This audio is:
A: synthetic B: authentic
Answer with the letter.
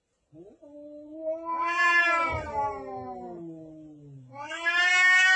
B